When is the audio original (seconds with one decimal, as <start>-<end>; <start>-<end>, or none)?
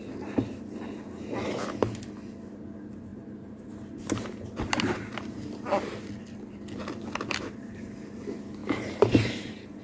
0.0-3.1; 6.1-8.6